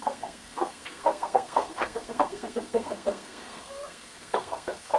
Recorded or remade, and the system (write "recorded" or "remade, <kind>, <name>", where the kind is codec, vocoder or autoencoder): remade, codec, SNAC